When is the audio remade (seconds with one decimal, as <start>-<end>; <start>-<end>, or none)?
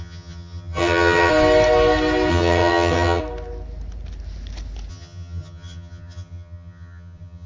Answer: 0.0-1.3; 2.3-3.2; 4.9-7.5